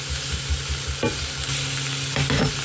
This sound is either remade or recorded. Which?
recorded